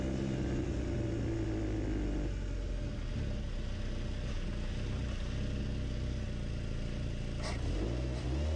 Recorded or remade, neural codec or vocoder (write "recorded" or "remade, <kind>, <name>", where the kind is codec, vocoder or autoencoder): recorded